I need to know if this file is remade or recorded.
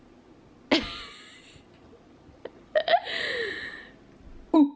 recorded